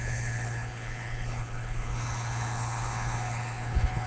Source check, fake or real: fake